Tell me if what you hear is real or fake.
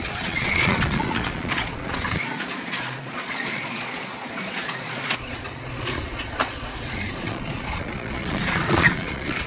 fake